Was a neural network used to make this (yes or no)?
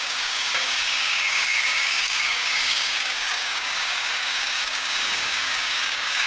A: yes